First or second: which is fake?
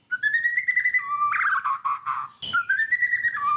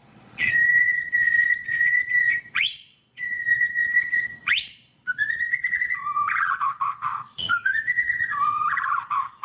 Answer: second